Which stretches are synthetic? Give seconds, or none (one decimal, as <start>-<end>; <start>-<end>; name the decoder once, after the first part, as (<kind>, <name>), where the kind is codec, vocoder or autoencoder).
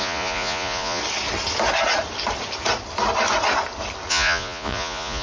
0.0-1.0 (vocoder, Vocos); 4.1-5.2